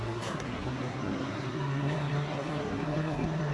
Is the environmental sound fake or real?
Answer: fake